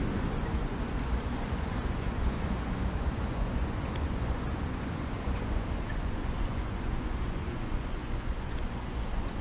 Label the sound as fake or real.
fake